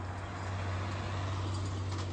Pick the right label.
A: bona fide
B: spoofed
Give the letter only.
A